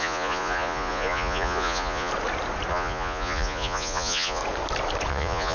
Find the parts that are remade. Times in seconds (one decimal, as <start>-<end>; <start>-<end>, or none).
0.0-2.1; 2.7-4.4; 5.1-5.5